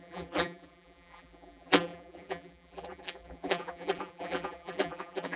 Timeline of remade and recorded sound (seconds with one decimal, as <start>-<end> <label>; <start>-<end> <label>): 0.0-5.4 remade